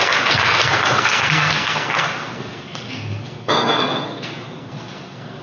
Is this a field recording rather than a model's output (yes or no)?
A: no